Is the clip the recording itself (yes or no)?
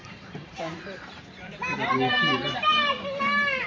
no